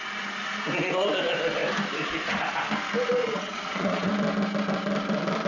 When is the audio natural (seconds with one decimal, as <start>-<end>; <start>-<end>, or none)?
0.0-3.2; 4.1-5.5